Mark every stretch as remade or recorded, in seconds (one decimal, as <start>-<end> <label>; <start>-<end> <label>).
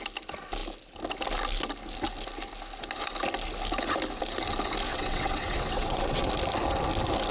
0.0-4.9 recorded; 4.9-6.3 remade; 6.3-7.3 recorded